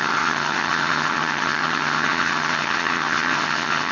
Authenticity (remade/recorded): remade